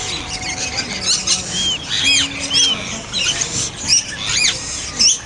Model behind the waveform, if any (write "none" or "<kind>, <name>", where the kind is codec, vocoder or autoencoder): none